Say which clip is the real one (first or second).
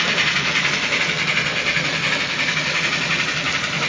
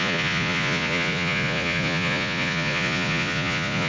first